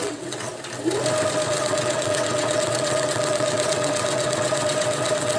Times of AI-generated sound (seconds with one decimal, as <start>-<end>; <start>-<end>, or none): 0.0-0.5; 1.5-5.4